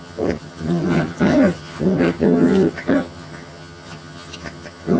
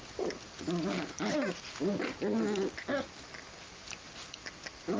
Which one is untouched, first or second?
second